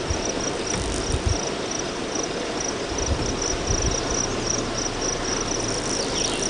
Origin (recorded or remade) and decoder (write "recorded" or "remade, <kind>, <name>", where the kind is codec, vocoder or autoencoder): recorded